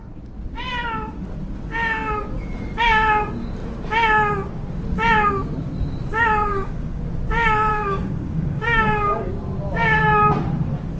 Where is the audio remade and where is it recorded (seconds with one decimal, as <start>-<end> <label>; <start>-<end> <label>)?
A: 0.0-6.5 recorded; 6.5-7.0 remade; 7.0-7.7 recorded; 7.7-9.3 remade; 9.3-11.0 recorded